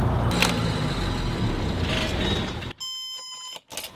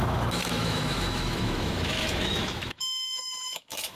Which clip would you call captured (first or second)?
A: first